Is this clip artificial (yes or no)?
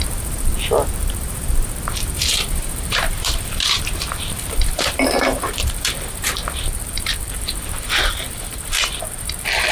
yes